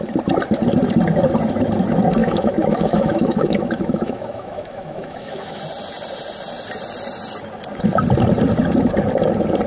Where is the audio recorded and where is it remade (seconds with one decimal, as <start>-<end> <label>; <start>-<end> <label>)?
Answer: 0.0-2.2 recorded; 2.2-5.6 remade; 5.6-9.7 recorded